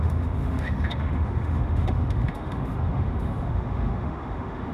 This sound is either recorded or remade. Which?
remade